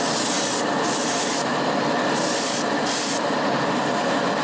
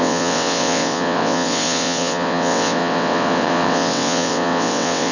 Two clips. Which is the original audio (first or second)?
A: first